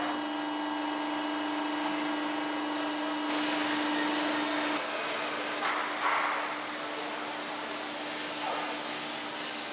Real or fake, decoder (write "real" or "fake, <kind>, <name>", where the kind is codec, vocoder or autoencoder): real